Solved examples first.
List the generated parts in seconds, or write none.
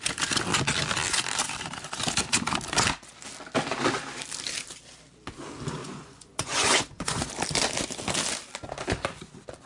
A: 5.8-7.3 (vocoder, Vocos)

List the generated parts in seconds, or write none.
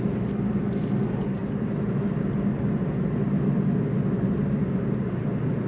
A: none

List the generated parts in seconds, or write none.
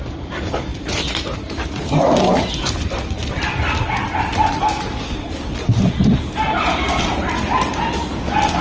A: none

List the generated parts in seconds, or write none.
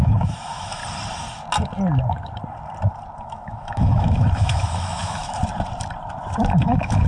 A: 0.0-0.8 (autoencoder, DAC-VAE); 3.2-5.4; 6.4-7.1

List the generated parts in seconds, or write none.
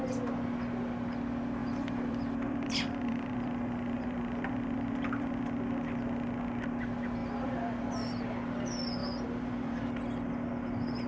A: 1.6-5.4 (vocoder, BigVGAN v2); 7.2-7.8; 9.0-9.8